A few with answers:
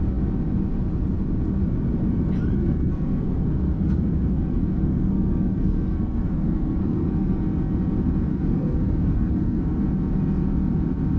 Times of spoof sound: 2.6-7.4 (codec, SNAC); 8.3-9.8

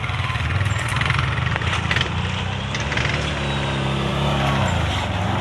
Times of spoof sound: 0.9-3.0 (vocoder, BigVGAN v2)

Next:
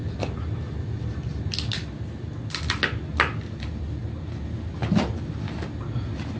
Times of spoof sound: none

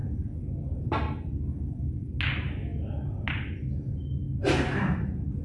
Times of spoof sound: 0.0-0.9 (vocoder, Vocos)

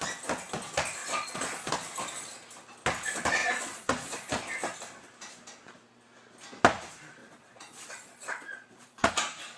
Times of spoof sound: 1.0-1.7 (vocoder, Vocos); 3.4-4.4; 7.2-9.1

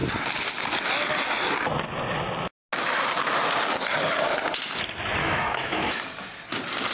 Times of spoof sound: 5.2-6.0 (autoencoder, DAC-VAE)